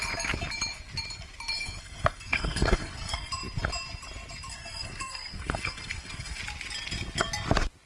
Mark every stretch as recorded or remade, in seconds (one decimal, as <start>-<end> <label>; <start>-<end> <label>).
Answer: 0.0-1.6 recorded; 1.6-3.3 remade; 3.3-4.5 recorded; 4.5-6.4 remade; 6.4-7.9 recorded